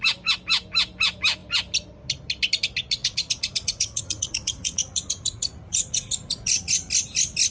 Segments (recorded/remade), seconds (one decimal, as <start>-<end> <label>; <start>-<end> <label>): 0.0-3.0 recorded; 3.0-6.9 remade; 6.9-7.5 recorded